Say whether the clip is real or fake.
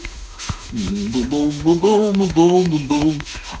fake